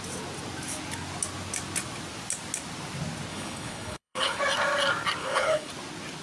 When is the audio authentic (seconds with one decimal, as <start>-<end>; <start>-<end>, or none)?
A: 0.0-3.3; 4.4-5.2; 5.7-6.2